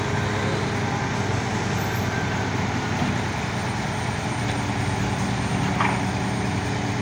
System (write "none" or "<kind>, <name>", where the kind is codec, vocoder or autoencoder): none